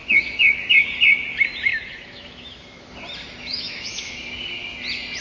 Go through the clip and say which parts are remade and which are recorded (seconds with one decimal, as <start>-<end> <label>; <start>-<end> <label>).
0.0-0.9 remade; 0.9-1.7 recorded; 1.7-2.9 remade; 2.9-3.5 recorded; 3.5-4.1 remade; 4.1-5.2 recorded